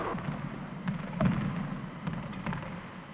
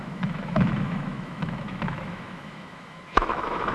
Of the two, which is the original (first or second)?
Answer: first